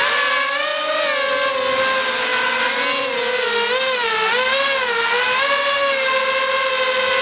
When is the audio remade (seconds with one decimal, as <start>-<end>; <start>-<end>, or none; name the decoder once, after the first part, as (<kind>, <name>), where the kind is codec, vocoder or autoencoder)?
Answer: none